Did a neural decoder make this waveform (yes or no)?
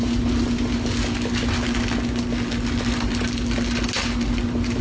no